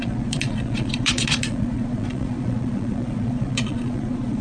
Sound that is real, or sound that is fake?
fake